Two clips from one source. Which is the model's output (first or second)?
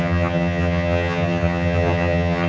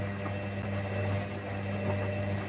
first